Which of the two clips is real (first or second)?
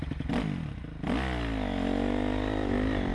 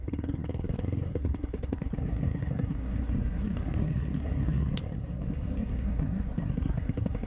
first